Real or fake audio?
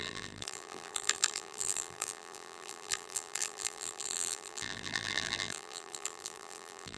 fake